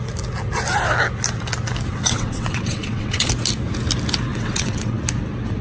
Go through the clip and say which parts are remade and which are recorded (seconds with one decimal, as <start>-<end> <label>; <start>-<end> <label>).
0.0-1.9 recorded; 1.9-3.3 remade; 3.3-4.3 recorded; 4.3-5.0 remade; 5.0-5.6 recorded